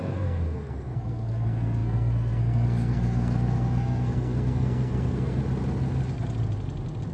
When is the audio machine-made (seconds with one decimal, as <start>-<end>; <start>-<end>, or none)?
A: 0.0-5.4